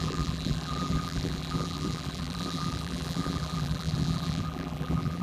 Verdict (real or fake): fake